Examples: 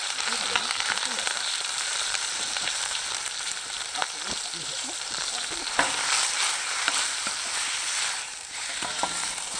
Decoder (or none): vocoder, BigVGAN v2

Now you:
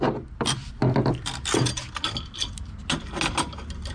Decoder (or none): none